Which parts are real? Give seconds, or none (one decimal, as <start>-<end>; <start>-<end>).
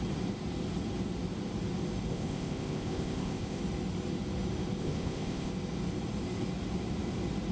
0.0-2.1; 3.6-4.8; 5.5-7.5